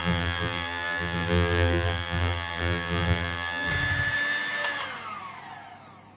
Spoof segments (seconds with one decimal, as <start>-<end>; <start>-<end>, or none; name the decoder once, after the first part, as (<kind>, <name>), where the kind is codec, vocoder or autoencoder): 0.0-3.7 (vocoder, BigVGAN v2)